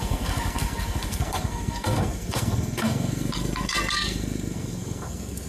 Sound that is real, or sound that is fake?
fake